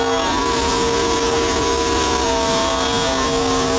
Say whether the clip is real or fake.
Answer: real